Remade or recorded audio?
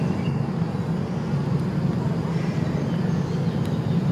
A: recorded